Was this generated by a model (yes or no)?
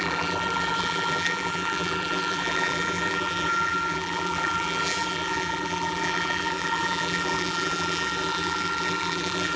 yes